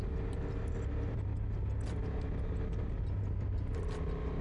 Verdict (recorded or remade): recorded